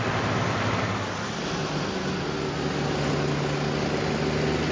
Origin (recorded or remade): recorded